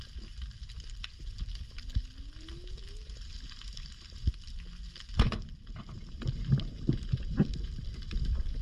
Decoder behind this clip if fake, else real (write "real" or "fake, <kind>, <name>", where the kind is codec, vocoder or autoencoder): fake, vocoder, BigVGAN v2